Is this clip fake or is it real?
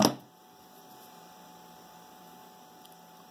real